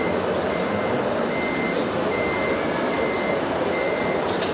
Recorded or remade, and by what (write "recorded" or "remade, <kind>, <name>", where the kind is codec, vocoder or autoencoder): recorded